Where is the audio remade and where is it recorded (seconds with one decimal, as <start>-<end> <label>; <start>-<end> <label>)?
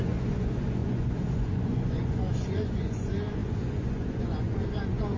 0.0-5.2 remade